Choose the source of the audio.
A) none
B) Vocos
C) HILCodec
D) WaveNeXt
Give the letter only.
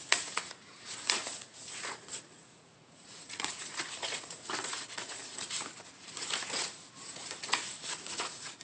B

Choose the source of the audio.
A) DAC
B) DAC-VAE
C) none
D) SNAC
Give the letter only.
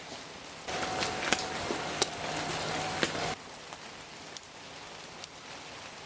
C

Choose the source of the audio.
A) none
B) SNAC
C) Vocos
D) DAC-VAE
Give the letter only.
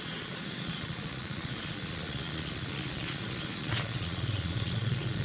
C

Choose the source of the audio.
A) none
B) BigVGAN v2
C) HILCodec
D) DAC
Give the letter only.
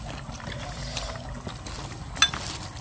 A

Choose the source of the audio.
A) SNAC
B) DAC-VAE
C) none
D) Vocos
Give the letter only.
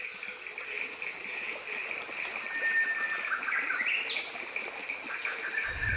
C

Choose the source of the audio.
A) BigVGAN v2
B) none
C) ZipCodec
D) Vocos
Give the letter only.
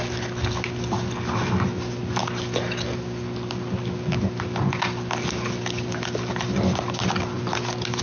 B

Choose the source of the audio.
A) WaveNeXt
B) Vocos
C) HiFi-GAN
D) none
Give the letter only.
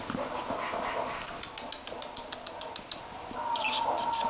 D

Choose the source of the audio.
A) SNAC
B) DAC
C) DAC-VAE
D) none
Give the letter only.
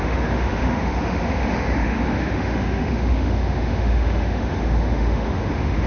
C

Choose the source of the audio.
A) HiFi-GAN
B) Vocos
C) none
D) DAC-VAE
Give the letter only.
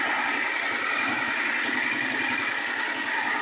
C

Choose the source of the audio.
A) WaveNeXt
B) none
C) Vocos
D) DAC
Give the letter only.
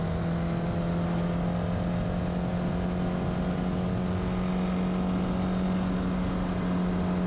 B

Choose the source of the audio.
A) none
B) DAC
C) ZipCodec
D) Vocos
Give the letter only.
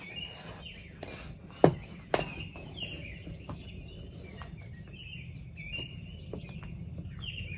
A